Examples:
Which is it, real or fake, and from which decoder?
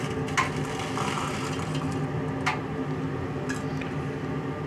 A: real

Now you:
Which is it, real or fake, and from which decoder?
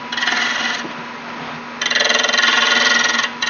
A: real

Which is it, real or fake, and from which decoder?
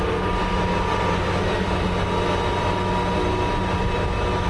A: real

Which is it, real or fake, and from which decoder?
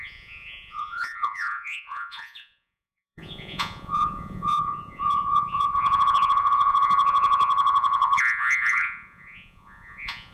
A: fake, vocoder, Vocos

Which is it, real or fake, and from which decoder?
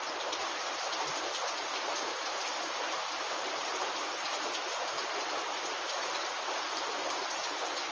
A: fake, vocoder, BigVGAN v2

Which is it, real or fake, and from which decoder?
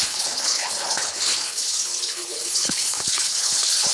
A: fake, codec, HILCodec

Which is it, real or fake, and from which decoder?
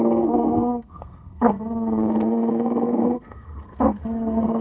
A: fake, codec, SNAC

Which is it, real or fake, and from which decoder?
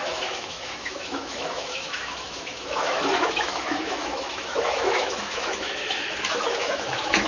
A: fake, autoencoder, DAC-VAE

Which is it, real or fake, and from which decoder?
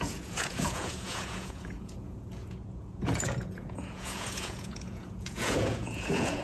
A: fake, vocoder, Vocos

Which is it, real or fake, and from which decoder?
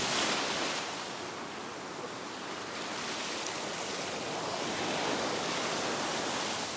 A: real